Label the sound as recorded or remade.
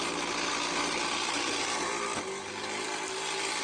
recorded